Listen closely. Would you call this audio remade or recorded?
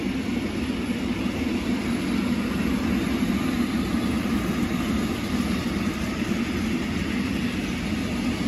recorded